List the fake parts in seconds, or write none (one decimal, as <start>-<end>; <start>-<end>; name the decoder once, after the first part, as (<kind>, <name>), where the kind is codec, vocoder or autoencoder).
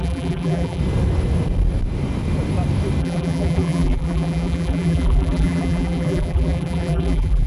0.0-0.8 (vocoder, BigVGAN v2); 3.0-7.5